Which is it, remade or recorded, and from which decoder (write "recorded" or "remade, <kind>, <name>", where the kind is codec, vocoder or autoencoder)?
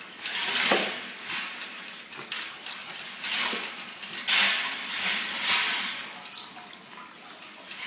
recorded